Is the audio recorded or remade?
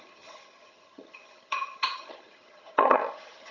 remade